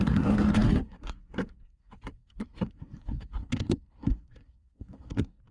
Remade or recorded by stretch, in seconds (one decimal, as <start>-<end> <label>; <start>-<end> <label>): 0.0-5.5 remade

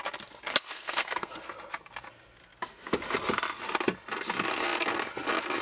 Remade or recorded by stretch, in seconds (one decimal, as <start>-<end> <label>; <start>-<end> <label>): 0.0-0.5 recorded; 0.5-1.4 remade; 1.4-5.6 recorded

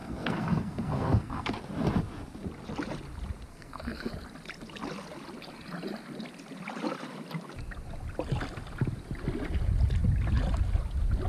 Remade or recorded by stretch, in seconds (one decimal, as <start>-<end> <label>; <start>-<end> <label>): 0.0-1.6 remade; 1.6-3.5 recorded; 3.5-4.1 remade; 4.1-11.3 recorded

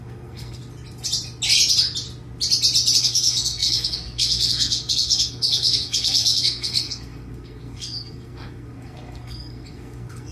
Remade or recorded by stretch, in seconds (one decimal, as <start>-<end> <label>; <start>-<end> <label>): 0.0-0.6 remade; 0.6-3.0 recorded; 3.0-10.3 remade